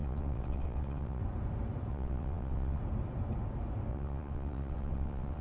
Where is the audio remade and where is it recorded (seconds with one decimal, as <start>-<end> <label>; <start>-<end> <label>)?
0.0-1.2 remade; 1.2-1.9 recorded; 1.9-2.8 remade; 2.8-3.9 recorded; 3.9-5.4 remade